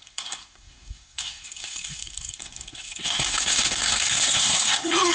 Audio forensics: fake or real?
fake